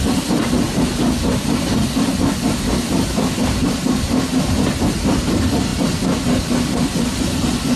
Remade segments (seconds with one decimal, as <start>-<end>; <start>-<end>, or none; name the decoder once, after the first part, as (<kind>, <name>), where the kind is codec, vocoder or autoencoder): none